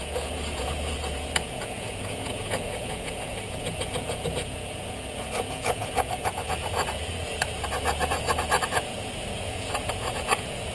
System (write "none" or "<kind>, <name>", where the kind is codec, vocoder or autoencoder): vocoder, Vocos